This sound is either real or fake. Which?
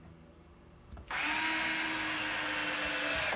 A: real